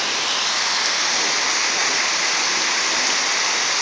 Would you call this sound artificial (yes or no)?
no